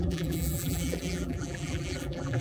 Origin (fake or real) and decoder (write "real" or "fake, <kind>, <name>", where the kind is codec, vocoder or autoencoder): fake, vocoder, BigVGAN v2